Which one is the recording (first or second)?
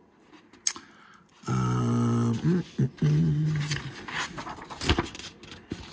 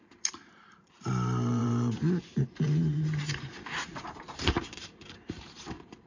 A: first